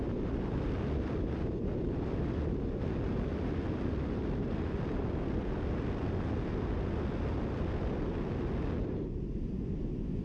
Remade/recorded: recorded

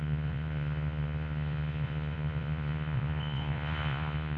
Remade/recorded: remade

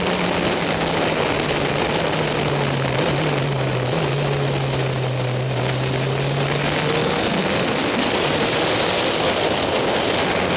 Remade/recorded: recorded